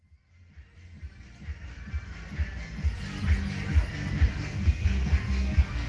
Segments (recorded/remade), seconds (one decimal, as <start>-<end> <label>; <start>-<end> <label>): 0.0-4.2 recorded; 4.2-5.9 remade